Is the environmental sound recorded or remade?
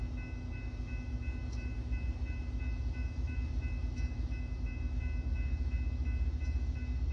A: remade